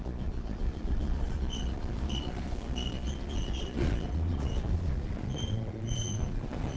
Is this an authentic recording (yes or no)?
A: no